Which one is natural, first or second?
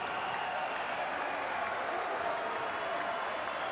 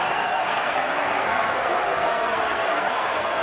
first